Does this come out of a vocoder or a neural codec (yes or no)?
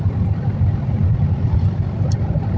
no